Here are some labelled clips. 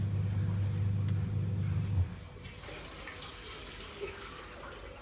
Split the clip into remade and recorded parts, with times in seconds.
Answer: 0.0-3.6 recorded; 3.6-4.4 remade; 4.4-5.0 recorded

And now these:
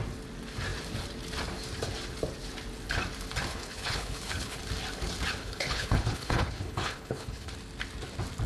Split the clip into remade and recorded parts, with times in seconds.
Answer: 0.0-3.5 recorded; 3.5-4.6 remade; 4.6-5.4 recorded; 5.4-7.5 remade; 7.5-8.5 recorded

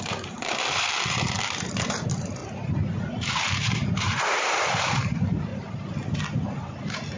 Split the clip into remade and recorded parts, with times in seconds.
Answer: 0.0-2.4 remade; 2.4-3.0 recorded; 3.0-5.5 remade; 5.5-6.8 recorded; 6.8-7.2 remade

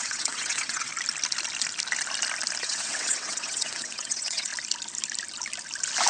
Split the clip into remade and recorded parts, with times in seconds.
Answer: 0.0-0.9 remade; 0.9-2.6 recorded; 2.6-4.5 remade; 4.5-6.1 recorded

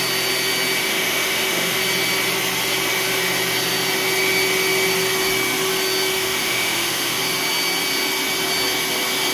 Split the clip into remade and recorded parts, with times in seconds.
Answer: 0.0-0.8 recorded; 0.8-1.8 remade; 1.8-6.1 recorded; 6.1-7.2 remade; 7.2-9.3 recorded